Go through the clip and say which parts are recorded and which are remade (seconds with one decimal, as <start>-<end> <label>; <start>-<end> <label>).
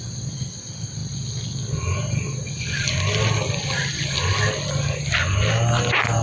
0.0-6.2 recorded